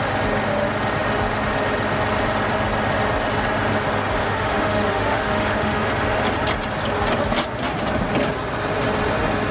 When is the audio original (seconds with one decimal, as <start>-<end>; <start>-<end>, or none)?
0.0-4.2; 5.9-9.5